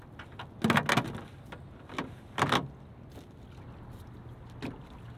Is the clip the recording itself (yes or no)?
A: yes